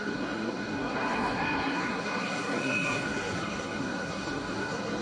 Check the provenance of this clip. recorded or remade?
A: remade